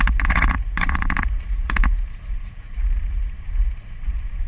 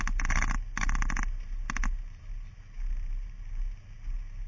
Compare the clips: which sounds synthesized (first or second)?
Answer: first